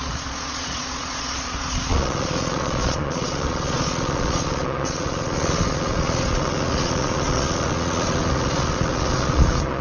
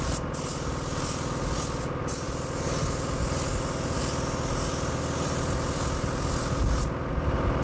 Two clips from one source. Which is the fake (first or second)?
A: first